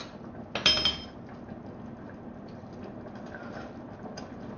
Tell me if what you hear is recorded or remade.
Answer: recorded